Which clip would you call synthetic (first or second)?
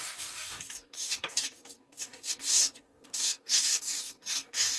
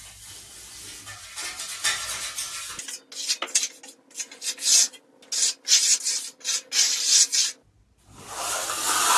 first